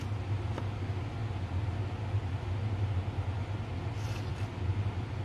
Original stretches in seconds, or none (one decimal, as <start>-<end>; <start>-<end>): 0.0-5.2